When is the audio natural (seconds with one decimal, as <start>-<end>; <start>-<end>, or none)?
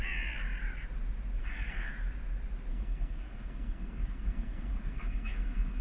0.0-1.4; 1.9-2.7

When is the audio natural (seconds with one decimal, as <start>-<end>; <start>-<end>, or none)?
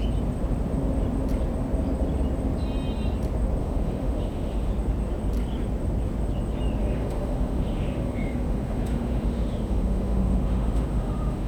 0.0-3.6; 4.7-6.8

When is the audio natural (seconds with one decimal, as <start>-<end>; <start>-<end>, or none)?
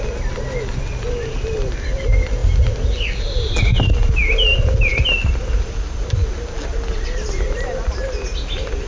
0.0-8.9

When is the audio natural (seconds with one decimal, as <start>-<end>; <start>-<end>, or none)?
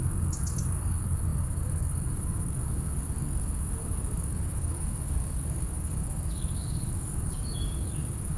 none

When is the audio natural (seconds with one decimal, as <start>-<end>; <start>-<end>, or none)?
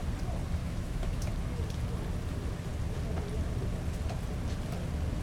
0.0-0.6; 1.3-5.2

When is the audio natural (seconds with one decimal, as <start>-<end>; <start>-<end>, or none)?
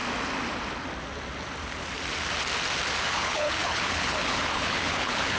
0.0-3.0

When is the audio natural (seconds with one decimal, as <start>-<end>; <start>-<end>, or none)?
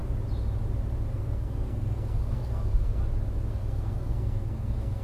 0.0-1.1; 3.0-3.5